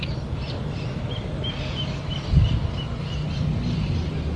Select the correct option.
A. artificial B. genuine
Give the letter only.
B